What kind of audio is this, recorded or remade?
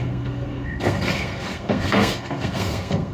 remade